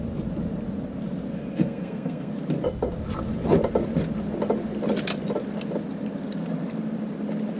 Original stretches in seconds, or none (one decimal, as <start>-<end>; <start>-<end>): 0.0-1.3; 2.3-7.6